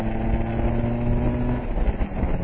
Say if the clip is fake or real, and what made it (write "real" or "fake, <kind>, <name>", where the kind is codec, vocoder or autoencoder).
real